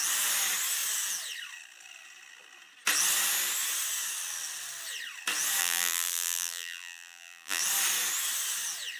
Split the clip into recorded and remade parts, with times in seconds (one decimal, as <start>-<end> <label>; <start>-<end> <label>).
0.0-5.6 recorded; 5.6-7.6 remade; 7.6-9.0 recorded

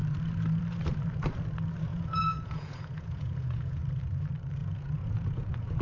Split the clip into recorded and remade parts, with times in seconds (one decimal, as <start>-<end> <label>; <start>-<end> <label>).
0.0-1.9 recorded; 1.9-3.8 remade; 3.8-4.6 recorded; 4.6-5.8 remade

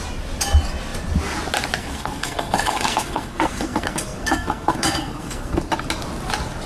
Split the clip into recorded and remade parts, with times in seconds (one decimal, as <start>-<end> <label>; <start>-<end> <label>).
0.0-1.8 recorded; 1.8-5.7 remade; 5.7-6.7 recorded